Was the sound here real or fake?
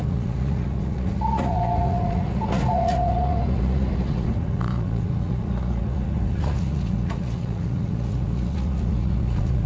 fake